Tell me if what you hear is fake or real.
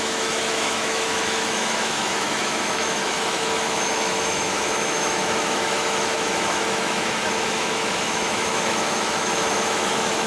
fake